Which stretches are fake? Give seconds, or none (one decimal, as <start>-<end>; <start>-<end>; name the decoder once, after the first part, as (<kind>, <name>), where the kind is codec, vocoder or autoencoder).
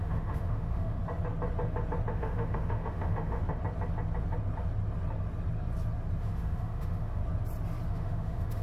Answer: 0.0-1.0 (autoencoder, DAC-VAE); 2.1-3.4; 6.2-7.2; 7.9-8.6